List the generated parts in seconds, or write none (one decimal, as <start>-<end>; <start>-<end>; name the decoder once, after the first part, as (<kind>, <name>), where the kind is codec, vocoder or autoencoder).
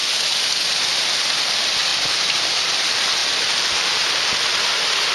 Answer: 1.9-2.8 (vocoder, BigVGAN v2); 3.2-4.0